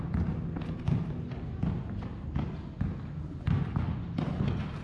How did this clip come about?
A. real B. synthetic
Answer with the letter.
A